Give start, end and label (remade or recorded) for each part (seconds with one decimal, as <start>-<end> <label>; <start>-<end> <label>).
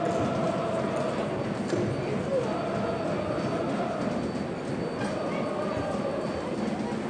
0.0-7.1 recorded